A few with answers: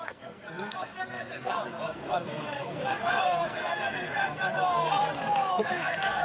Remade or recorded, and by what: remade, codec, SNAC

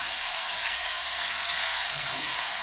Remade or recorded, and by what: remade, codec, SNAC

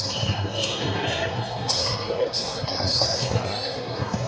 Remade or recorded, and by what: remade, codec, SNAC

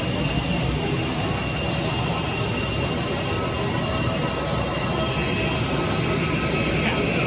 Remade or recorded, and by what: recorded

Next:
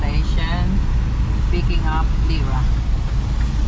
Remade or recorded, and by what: recorded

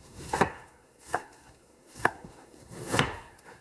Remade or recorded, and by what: remade, codec, SNAC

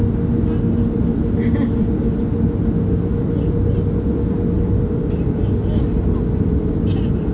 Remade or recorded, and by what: recorded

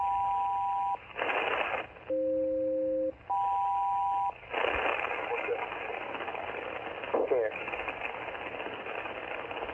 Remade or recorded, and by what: recorded